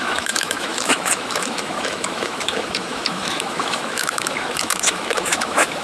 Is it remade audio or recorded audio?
remade